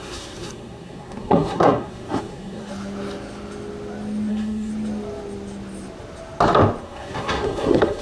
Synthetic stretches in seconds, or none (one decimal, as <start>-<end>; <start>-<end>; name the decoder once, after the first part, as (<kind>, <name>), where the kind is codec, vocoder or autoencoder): 0.0-2.7 (codec, SNAC); 4.3-4.7; 6.8-8.0